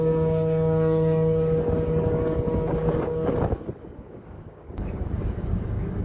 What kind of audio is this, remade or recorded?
remade